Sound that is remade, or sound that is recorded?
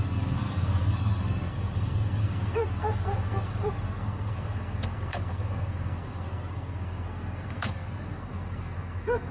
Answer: remade